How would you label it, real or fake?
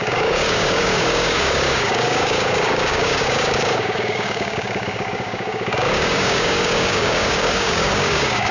fake